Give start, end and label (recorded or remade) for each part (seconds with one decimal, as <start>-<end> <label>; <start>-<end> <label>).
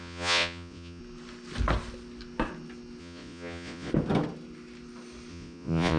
0.0-1.0 remade; 1.0-3.0 recorded; 3.0-3.9 remade; 3.9-5.3 recorded; 5.3-6.0 remade